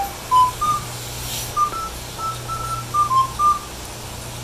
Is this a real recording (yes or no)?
yes